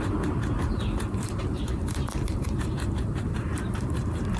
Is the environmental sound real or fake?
fake